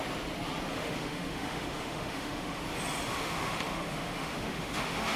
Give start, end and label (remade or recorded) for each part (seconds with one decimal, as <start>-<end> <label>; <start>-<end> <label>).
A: 0.0-0.7 recorded; 0.7-2.6 remade; 2.6-3.1 recorded; 3.1-5.2 remade

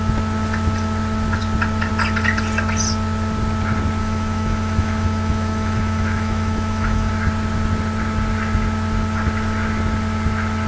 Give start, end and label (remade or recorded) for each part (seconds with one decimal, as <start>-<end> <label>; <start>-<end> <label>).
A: 0.0-4.0 recorded; 4.0-7.1 remade; 7.1-10.7 recorded

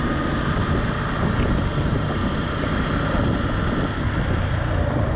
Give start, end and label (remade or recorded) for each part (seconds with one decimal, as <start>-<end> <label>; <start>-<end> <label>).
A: 0.0-5.2 recorded